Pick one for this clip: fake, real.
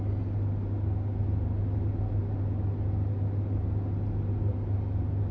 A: real